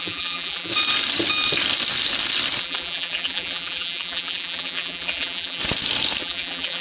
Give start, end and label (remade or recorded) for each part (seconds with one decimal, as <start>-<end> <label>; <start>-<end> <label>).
0.0-0.7 remade; 0.7-2.6 recorded; 2.6-5.6 remade; 5.6-6.2 recorded; 6.2-6.8 remade

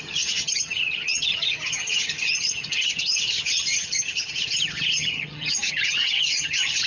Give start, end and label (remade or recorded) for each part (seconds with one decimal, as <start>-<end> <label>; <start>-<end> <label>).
0.0-6.9 remade

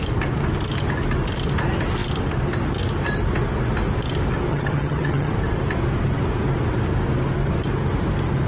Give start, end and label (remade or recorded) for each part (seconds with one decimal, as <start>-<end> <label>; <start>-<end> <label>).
0.0-4.5 recorded; 4.5-5.3 remade; 5.3-8.5 recorded

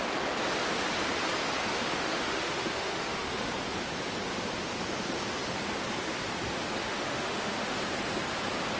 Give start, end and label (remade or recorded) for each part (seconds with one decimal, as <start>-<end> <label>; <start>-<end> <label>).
0.0-1.6 recorded; 1.6-3.5 remade; 3.5-6.8 recorded; 6.8-7.8 remade; 7.8-8.8 recorded

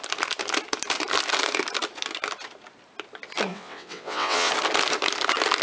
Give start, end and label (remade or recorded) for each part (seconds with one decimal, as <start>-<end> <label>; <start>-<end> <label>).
0.0-3.5 recorded; 3.5-4.5 remade; 4.5-5.6 recorded

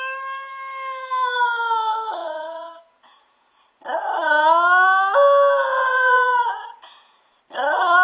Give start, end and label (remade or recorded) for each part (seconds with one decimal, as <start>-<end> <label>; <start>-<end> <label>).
0.0-2.2 recorded; 2.2-3.8 remade; 3.8-5.9 recorded; 5.9-7.4 remade; 7.4-8.0 recorded